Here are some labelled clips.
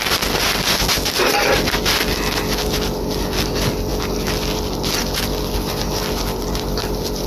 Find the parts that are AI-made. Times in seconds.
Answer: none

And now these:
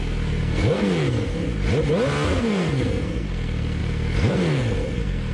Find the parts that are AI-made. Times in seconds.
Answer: 0.0-1.4; 2.3-5.3